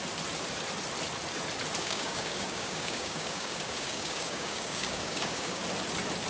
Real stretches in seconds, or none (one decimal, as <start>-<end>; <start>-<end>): 0.0-1.8; 5.6-6.3